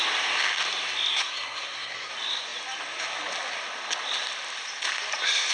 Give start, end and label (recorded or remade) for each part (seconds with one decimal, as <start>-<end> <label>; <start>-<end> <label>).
0.0-1.1 recorded; 1.1-2.1 remade; 2.1-5.5 recorded